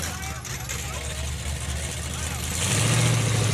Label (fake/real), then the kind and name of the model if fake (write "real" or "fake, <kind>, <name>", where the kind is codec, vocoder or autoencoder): real